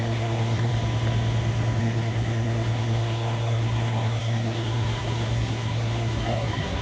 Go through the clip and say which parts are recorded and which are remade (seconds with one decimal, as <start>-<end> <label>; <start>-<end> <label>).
0.0-0.7 remade; 0.7-1.8 recorded; 1.8-6.8 remade